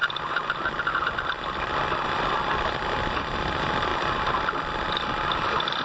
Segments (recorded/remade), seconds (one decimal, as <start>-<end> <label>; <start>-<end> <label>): 0.0-5.8 remade